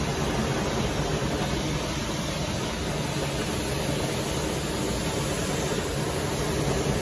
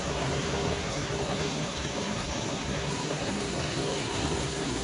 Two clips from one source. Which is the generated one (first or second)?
second